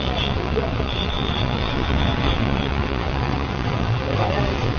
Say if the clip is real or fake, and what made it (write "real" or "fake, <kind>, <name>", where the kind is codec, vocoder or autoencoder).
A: fake, vocoder, WaveNeXt